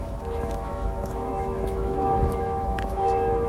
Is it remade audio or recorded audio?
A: remade